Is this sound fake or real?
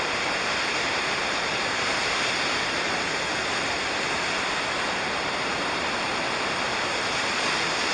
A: fake